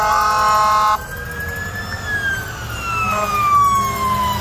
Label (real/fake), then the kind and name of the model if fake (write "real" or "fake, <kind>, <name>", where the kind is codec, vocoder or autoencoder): real